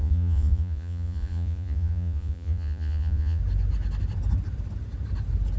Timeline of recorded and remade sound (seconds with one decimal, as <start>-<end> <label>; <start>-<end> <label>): 0.0-3.4 remade; 3.4-5.6 recorded